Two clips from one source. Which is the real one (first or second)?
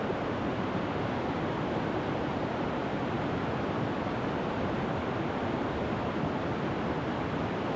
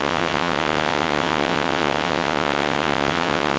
first